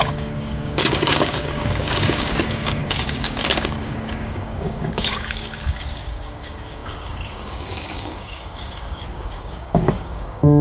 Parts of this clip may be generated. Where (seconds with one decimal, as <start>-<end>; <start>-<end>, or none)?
0.0-10.6